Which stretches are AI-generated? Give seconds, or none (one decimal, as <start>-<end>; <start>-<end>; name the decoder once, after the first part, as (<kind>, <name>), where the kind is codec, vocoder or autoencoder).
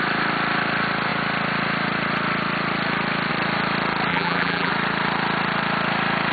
4.1-4.7 (vocoder, BigVGAN v2)